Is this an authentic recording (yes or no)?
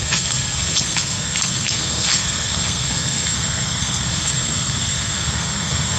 no